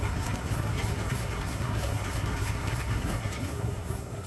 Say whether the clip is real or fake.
fake